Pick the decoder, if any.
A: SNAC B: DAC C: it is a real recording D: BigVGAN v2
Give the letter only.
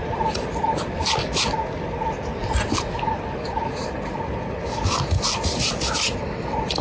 C